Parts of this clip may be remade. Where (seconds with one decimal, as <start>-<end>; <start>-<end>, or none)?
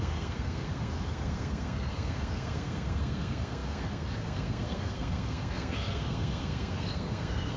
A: 0.0-7.6